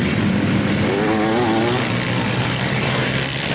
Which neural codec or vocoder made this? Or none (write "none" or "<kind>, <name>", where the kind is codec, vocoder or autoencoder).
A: none